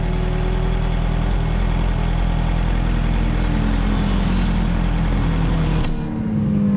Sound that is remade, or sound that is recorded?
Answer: recorded